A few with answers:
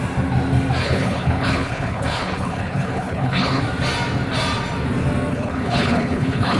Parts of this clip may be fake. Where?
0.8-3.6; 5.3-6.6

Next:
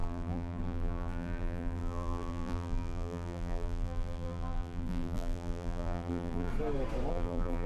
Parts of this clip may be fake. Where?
0.0-6.5; 7.1-7.7